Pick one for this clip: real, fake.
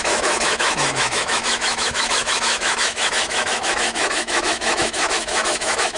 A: fake